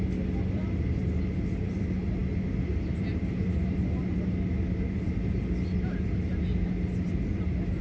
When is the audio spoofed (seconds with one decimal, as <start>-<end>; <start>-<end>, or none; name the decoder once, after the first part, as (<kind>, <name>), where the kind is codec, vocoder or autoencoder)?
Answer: none